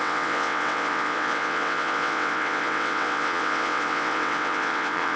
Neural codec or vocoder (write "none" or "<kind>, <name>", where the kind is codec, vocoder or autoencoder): vocoder, WaveNeXt